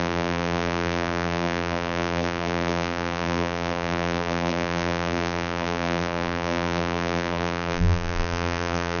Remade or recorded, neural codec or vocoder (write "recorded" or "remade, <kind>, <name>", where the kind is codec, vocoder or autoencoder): remade, vocoder, BigVGAN v2